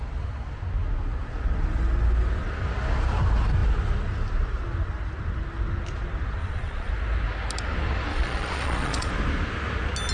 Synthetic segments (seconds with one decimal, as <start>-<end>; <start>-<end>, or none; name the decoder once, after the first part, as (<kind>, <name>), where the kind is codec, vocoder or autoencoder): 6.4-6.9 (vocoder, Vocos); 8.1-9.1